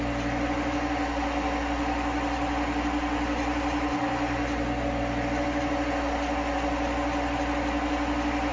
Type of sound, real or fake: real